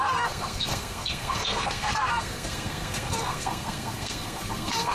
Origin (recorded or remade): remade